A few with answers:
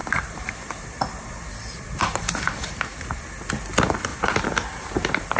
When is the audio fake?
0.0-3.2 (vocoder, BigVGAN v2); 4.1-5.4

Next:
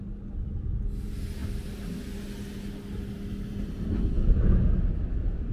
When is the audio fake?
none

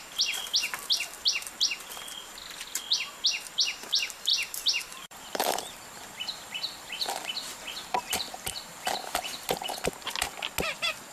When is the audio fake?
4.3-9.5 (vocoder, BigVGAN v2)

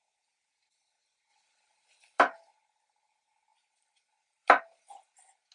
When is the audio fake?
1.3-2.2 (vocoder, BigVGAN v2); 3.5-4.6

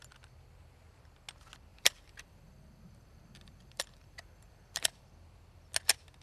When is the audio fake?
1.7-5.1 (vocoder, BigVGAN v2)

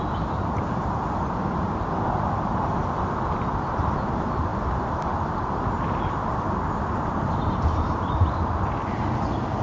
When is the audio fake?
0.0-1.2 (vocoder, BigVGAN v2); 2.2-9.6

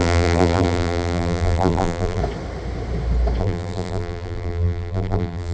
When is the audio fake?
0.0-2.2 (vocoder, BigVGAN v2); 3.4-5.5